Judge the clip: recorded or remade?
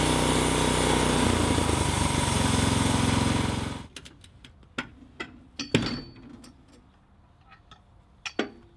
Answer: recorded